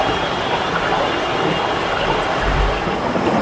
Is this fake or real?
real